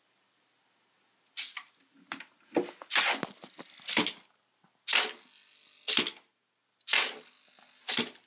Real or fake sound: real